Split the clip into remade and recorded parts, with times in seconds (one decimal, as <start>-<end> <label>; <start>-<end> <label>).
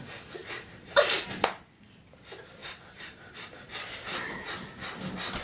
0.0-0.4 recorded; 0.4-1.3 remade; 1.3-2.6 recorded; 2.6-4.5 remade; 4.5-5.4 recorded